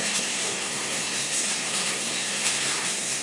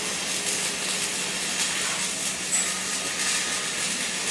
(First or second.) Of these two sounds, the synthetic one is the first